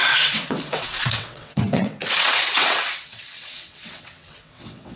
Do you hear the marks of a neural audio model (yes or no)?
yes